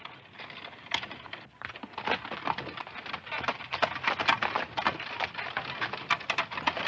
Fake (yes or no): no